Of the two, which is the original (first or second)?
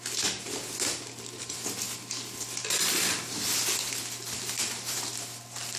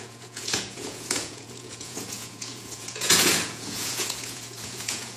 first